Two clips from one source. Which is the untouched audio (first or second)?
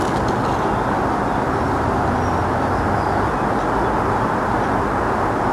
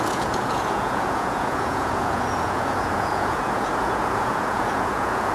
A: first